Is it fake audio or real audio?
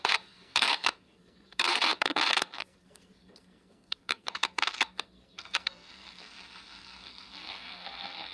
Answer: fake